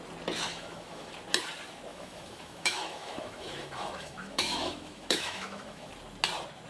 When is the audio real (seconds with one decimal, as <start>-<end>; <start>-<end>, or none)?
0.0-0.5; 1.1-1.9; 5.9-6.7